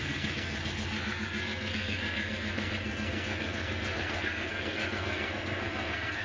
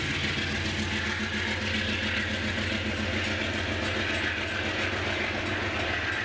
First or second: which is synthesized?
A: first